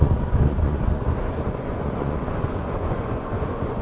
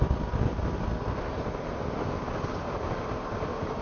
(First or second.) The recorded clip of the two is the second